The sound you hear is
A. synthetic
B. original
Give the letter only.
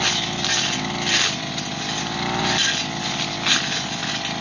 B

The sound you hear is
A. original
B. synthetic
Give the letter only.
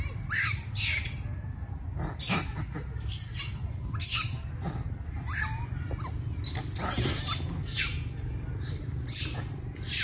A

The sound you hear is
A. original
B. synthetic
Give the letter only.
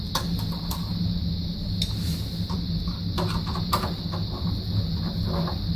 A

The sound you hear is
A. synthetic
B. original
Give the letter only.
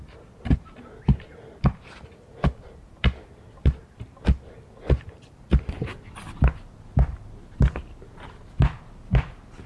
B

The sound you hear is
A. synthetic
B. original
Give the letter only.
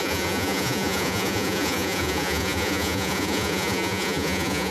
A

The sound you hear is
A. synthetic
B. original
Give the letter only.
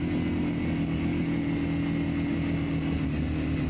B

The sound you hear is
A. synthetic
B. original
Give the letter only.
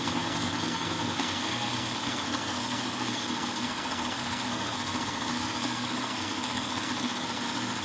A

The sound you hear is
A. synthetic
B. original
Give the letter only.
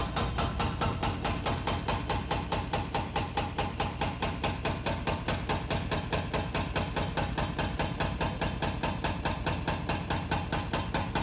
B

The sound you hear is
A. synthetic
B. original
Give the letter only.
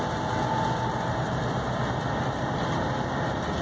B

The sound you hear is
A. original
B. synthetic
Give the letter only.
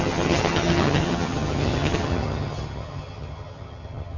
B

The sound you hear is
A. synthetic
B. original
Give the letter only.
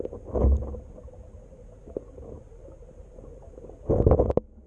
B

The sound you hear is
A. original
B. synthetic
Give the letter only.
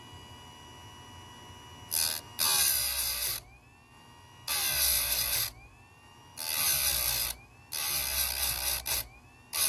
A